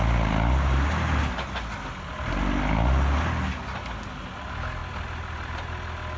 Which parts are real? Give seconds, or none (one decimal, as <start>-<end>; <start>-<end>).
0.0-6.2